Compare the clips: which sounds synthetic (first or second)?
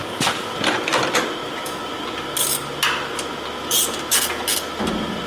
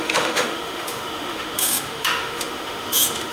second